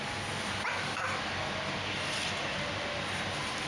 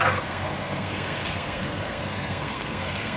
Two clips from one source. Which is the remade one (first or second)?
second